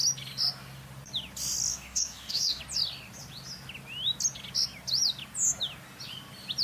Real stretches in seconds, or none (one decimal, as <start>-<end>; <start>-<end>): 0.0-1.7; 2.6-6.6